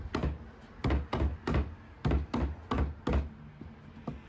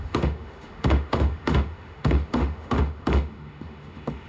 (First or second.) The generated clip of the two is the second